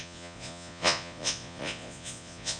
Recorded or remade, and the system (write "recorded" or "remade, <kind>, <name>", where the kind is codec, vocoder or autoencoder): remade, vocoder, Vocos